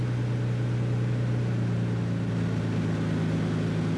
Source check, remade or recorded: recorded